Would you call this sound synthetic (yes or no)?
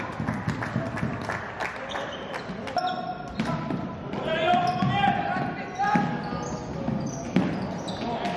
no